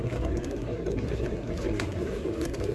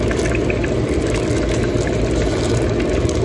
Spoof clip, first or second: first